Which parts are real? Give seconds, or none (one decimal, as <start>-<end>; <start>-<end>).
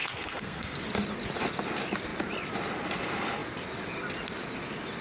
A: 0.8-5.0